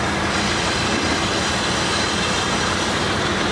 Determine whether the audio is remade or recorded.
recorded